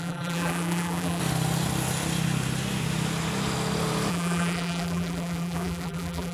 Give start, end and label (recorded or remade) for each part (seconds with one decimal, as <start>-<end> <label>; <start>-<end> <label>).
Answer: 0.0-1.2 remade; 1.2-4.1 recorded; 4.1-6.3 remade